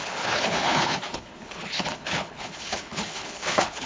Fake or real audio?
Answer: fake